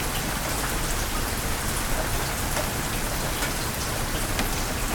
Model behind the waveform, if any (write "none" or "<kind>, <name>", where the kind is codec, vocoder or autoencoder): none